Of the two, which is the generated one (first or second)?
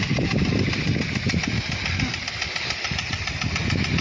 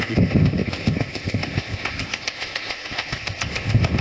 second